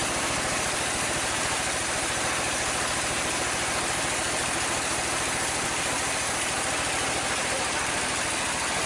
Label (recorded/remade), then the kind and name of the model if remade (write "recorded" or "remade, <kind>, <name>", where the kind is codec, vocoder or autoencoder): recorded